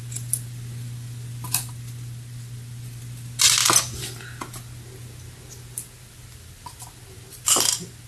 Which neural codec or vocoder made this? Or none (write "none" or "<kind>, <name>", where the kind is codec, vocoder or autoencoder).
none